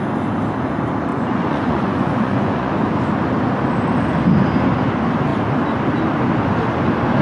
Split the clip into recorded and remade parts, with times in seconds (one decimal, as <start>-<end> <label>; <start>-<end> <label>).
0.0-1.1 recorded; 1.1-2.7 remade; 2.7-7.2 recorded